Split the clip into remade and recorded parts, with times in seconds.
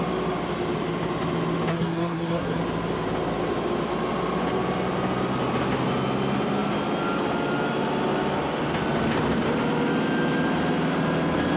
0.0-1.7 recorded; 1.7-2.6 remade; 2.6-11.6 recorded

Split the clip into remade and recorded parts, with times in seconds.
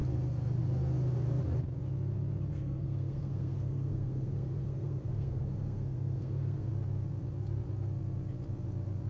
0.0-2.5 recorded; 2.5-6.7 remade; 6.7-9.1 recorded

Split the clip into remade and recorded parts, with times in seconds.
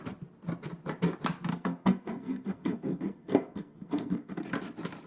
0.0-1.5 recorded; 1.5-4.4 remade; 4.4-5.1 recorded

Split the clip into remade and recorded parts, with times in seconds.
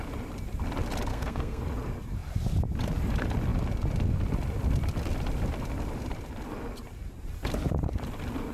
0.0-1.1 recorded; 1.1-1.6 remade; 1.6-8.5 recorded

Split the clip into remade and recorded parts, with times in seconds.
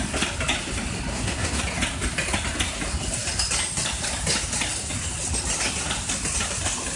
0.0-1.1 recorded; 1.1-1.6 remade; 1.6-7.0 recorded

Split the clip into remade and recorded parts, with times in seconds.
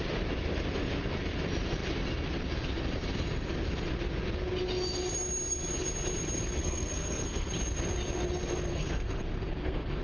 0.0-6.6 recorded; 6.6-7.5 remade; 7.5-8.7 recorded; 8.7-10.0 remade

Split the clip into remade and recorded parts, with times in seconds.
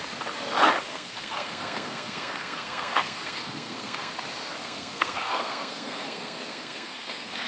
0.0-0.9 recorded; 0.9-4.1 remade; 4.1-4.6 recorded; 4.6-7.5 remade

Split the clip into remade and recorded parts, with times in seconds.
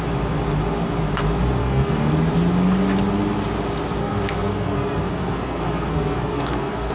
0.0-1.6 recorded; 1.6-2.1 remade; 2.1-4.0 recorded; 4.0-6.9 remade